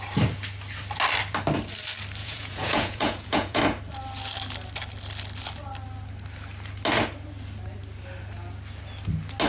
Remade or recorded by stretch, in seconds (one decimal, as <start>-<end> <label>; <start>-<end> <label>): 0.0-2.2 recorded; 2.2-3.6 remade; 3.6-9.5 recorded